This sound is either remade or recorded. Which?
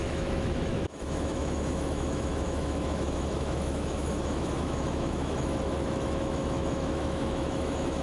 remade